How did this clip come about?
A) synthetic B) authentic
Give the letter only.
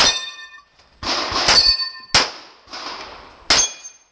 B